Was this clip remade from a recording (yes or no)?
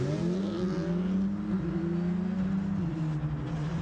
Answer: no